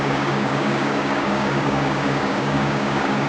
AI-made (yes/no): yes